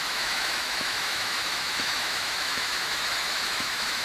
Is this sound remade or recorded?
remade